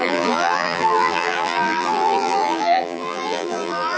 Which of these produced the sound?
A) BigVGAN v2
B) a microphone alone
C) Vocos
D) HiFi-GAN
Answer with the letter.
A